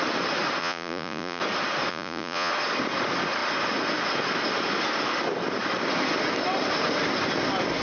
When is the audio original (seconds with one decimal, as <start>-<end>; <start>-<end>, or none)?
0.0-0.6; 1.4-1.9; 2.5-7.8